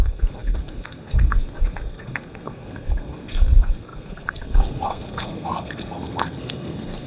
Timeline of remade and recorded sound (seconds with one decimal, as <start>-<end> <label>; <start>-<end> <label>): 0.0-7.1 remade